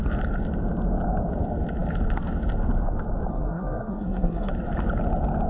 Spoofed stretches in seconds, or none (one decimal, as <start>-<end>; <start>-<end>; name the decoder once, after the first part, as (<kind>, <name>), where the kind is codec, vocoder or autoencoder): 3.3-4.5 (codec, SNAC)